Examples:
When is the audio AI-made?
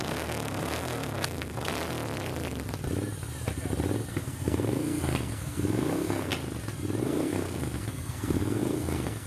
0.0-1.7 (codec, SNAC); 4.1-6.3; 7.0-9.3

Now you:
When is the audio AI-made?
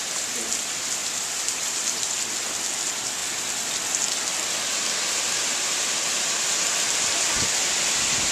1.0-2.0 (vocoder, BigVGAN v2)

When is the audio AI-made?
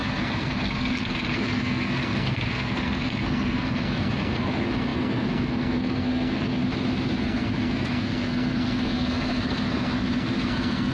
0.0-6.6 (codec, SNAC); 7.2-10.9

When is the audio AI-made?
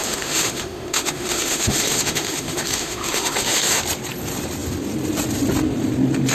0.0-3.8 (autoencoder, DAC-VAE)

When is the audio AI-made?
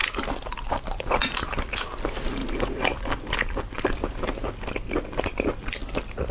2.4-4.2 (vocoder, BigVGAN v2)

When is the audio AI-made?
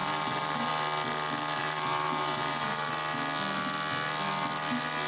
0.0-0.7 (vocoder, BigVGAN v2); 1.6-2.9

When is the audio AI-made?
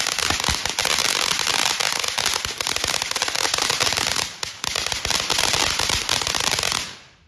none